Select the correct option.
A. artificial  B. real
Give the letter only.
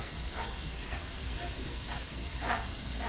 A